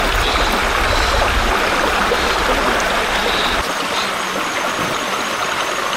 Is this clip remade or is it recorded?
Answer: recorded